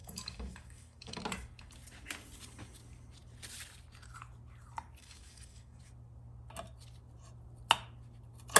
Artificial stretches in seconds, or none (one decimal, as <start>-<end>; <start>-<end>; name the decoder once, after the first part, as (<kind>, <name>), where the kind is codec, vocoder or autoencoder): 0.0-1.2 (codec, DAC); 5.0-5.8